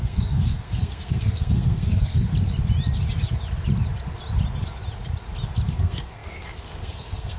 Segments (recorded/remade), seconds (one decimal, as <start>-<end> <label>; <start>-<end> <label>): 0.0-2.3 remade; 2.3-5.7 recorded; 5.7-7.4 remade